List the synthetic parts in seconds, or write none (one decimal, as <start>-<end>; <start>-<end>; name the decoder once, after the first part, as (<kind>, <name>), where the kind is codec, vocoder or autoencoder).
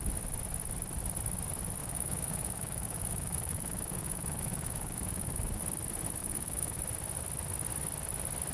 1.8-5.6 (autoencoder, DAC-VAE); 6.2-6.8